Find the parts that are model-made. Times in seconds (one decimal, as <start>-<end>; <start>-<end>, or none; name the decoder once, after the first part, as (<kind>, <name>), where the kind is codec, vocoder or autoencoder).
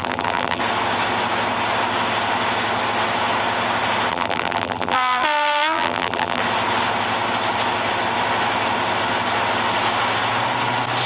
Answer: 0.0-0.6 (vocoder, BigVGAN v2); 4.1-6.4